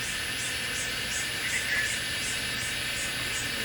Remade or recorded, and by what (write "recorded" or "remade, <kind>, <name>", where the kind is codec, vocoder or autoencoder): recorded